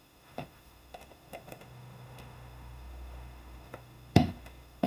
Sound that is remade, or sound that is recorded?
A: remade